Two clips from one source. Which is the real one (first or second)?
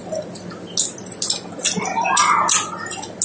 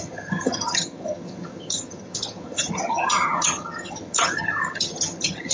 first